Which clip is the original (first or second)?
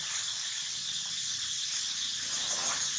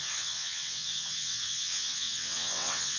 first